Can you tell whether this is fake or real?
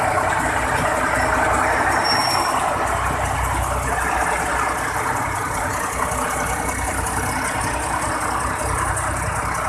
real